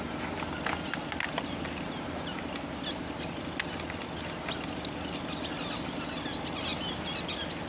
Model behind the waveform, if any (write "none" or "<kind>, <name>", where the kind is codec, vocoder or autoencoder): none